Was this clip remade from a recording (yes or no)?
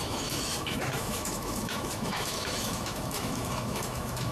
yes